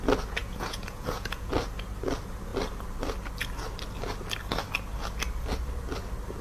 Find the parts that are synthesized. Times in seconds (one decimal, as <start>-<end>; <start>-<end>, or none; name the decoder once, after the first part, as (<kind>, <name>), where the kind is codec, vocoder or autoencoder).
0.4-1.5 (vocoder, Vocos)

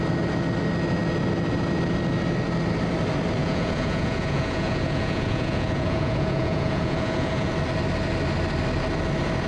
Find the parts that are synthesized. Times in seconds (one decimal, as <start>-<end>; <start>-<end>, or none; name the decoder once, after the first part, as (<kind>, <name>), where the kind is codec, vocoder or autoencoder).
3.4-7.5 (vocoder, Vocos)

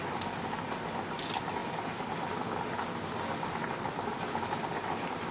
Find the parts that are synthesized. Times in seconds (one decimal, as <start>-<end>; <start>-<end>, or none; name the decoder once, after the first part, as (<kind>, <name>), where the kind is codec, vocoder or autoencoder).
none

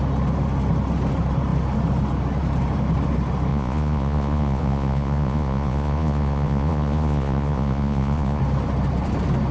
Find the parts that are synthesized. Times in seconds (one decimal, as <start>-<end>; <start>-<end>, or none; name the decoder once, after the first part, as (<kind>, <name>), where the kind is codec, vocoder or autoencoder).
3.5-8.4 (vocoder, Vocos)